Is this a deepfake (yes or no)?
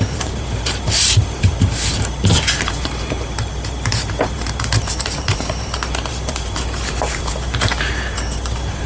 yes